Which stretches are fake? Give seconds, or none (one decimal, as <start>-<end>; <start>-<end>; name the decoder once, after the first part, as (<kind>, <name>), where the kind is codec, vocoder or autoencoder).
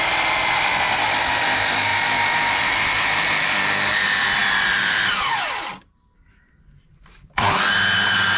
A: 0.0-1.9 (vocoder, BigVGAN v2); 3.3-4.4; 6.9-8.4